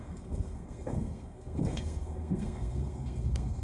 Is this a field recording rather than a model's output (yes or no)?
no